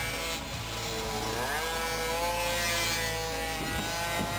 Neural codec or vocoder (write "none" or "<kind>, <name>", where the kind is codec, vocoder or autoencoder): none